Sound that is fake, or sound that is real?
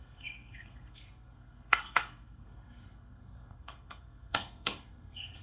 fake